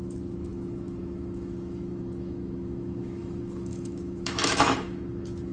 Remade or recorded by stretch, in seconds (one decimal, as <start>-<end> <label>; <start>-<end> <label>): 0.0-5.5 remade